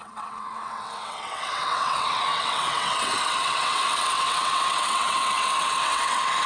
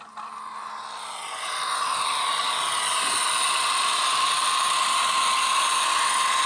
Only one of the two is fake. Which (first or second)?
first